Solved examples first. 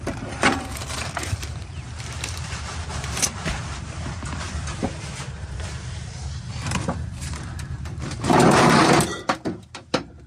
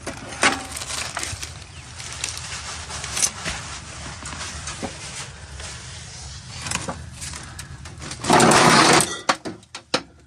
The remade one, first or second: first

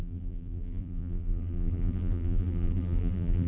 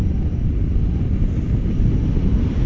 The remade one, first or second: first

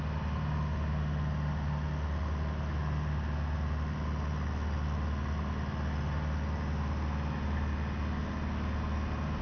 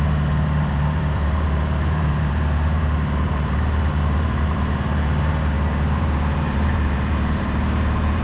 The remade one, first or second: second